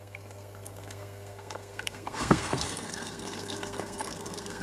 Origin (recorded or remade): remade